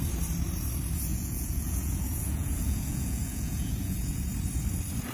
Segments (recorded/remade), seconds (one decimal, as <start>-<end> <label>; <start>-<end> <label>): 0.0-1.1 recorded; 1.1-4.2 remade; 4.2-5.1 recorded